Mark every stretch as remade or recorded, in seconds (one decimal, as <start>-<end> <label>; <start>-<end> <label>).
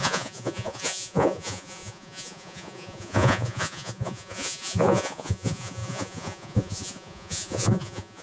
0.0-8.2 remade